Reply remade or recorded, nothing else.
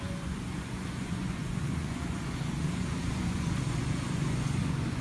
remade